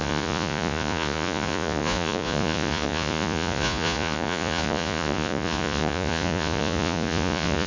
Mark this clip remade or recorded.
remade